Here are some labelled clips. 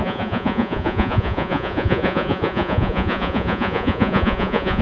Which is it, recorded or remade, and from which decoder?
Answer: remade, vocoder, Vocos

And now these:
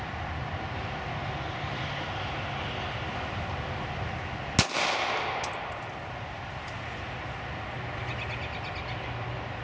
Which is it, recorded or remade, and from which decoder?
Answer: recorded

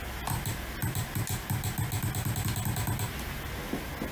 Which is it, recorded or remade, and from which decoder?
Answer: recorded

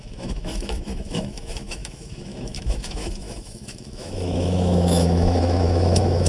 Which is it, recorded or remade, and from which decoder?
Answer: remade, autoencoder, DAC-VAE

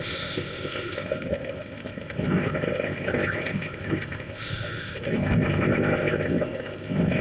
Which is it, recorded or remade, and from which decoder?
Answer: remade, codec, ZipCodec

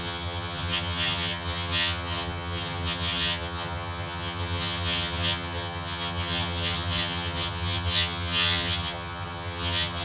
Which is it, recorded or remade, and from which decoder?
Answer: remade, vocoder, HiFi-GAN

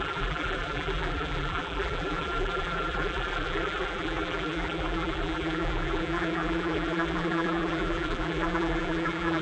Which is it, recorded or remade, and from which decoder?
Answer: remade, vocoder, BigVGAN v2